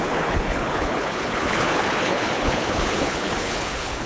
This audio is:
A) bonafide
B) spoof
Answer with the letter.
B